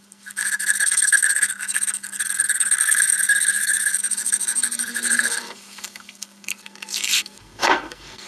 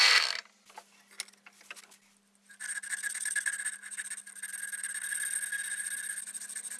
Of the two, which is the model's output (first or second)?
first